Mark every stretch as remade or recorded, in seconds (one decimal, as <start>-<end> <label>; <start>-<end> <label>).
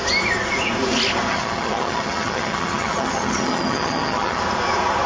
0.0-1.3 recorded; 1.3-4.4 remade; 4.4-5.1 recorded